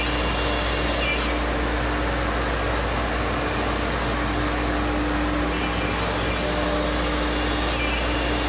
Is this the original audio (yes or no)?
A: yes